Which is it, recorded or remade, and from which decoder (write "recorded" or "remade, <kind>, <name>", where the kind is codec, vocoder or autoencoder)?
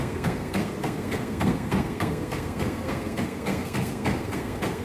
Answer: remade, codec, SNAC